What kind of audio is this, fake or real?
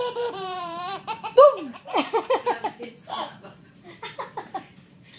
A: fake